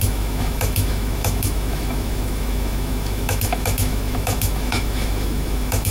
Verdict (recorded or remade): remade